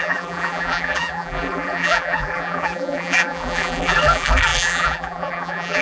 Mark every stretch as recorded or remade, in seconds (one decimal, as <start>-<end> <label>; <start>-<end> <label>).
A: 0.0-5.8 remade

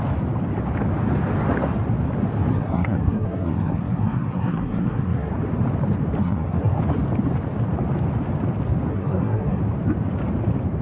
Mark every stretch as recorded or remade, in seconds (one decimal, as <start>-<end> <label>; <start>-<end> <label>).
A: 0.0-2.5 recorded; 2.5-5.3 remade; 5.3-6.2 recorded; 6.2-6.8 remade; 6.8-8.9 recorded; 8.9-9.6 remade; 9.6-10.8 recorded

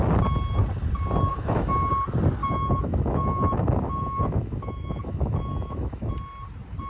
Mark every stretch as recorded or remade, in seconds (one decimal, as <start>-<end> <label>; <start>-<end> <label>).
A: 0.0-1.3 recorded; 1.3-1.9 remade; 1.9-2.4 recorded; 2.4-6.1 remade; 6.1-6.9 recorded